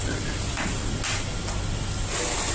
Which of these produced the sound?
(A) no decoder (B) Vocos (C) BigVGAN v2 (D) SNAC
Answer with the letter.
A